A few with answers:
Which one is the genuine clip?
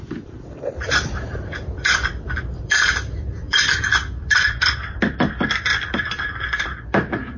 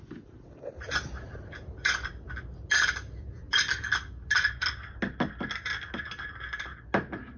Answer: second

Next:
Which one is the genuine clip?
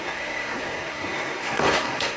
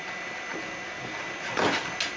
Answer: second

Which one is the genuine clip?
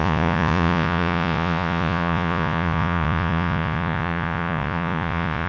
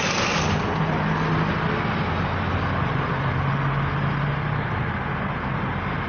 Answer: second